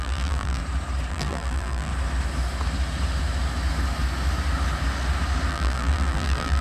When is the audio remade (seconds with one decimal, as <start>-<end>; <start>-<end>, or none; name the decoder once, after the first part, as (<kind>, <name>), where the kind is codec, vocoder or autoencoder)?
0.0-0.6 (vocoder, BigVGAN v2); 1.1-1.9; 5.5-6.6